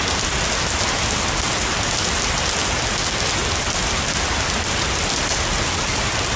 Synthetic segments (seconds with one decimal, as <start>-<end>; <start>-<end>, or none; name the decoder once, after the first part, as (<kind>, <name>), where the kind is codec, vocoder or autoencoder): none